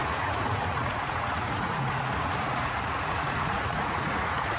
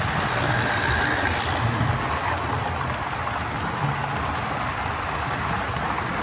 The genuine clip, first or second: second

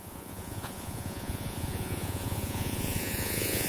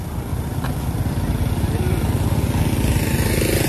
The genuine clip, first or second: second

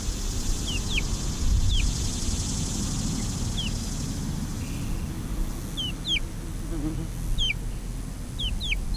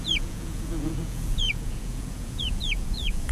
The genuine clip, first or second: first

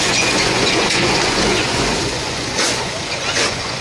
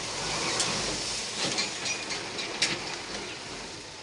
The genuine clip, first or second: second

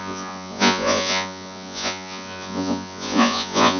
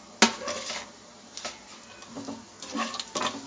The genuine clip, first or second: second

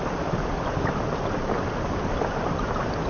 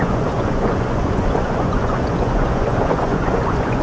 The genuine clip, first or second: first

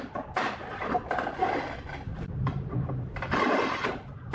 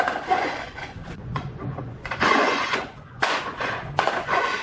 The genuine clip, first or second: first